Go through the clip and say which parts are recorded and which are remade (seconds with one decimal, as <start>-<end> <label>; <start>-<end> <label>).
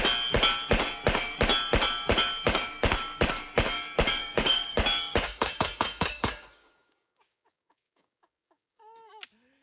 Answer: 0.0-4.2 recorded; 4.2-9.1 remade; 9.1-9.6 recorded